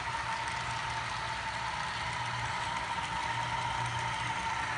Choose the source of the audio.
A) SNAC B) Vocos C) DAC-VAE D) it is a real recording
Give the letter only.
D